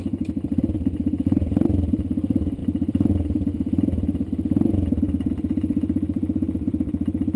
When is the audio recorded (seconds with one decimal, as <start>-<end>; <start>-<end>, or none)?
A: 3.5-5.3